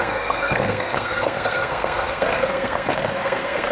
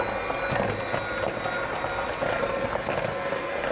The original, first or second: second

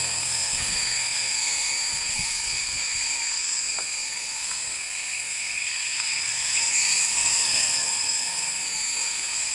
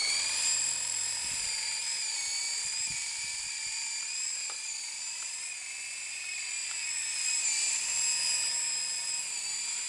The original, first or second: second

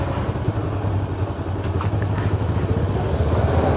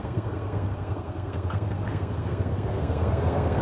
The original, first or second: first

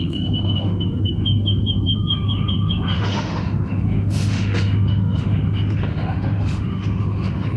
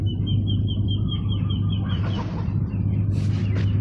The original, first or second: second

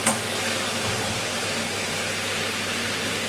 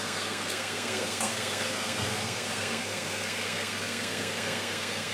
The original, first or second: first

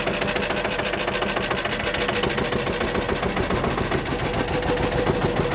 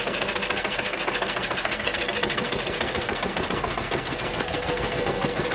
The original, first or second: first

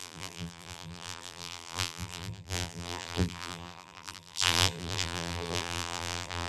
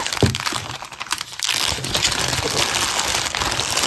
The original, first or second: second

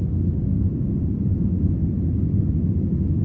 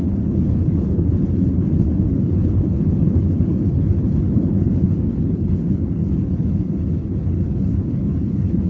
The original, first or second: first